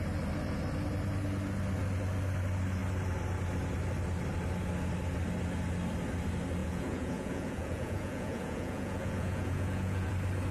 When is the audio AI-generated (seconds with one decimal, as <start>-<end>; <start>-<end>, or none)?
6.6-10.1